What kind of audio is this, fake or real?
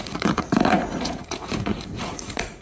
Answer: fake